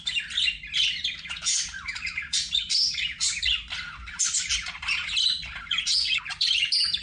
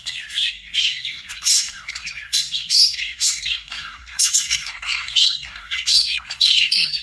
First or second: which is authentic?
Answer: first